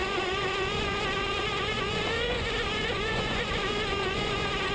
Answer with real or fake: fake